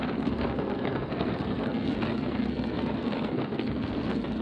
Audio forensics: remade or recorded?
remade